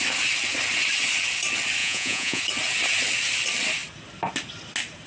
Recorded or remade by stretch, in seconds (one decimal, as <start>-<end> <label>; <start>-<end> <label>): 0.0-1.8 recorded; 1.8-2.4 remade; 2.4-5.1 recorded